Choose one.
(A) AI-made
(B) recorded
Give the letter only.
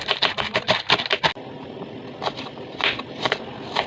B